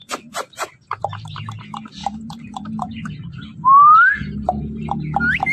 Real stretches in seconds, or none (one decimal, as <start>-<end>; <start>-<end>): 1.4-2.0; 4.6-5.5